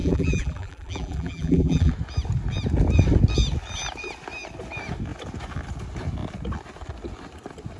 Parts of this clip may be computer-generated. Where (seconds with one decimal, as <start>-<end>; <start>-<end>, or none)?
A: 0.0-1.9